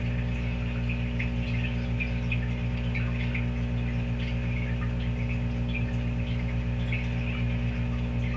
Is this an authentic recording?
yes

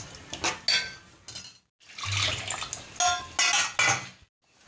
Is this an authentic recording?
yes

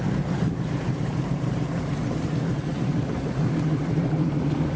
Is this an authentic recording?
no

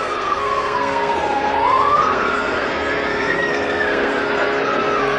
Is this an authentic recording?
no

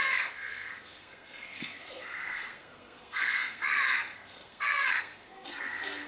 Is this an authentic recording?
no